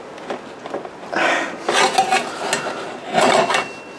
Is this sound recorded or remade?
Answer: recorded